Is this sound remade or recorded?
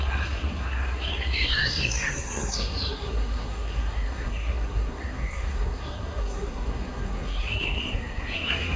remade